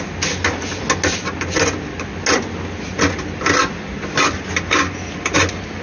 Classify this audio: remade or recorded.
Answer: recorded